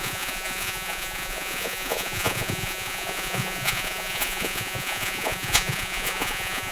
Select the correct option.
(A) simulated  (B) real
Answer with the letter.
A